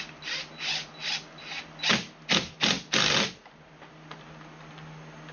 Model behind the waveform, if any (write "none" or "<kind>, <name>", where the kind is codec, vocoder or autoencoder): none